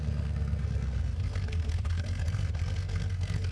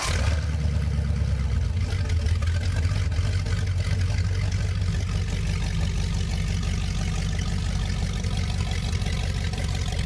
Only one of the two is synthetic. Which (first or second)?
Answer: first